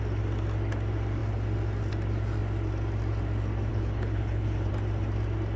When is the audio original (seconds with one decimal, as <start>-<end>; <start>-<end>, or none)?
0.0-3.7; 4.7-5.6